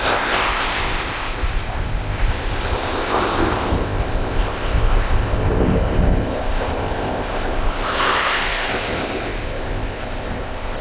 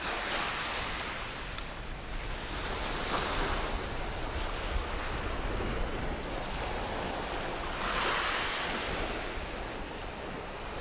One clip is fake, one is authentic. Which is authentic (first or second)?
second